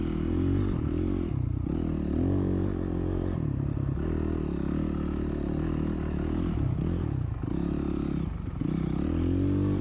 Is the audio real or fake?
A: real